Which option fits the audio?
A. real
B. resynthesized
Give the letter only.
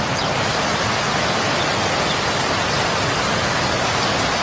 B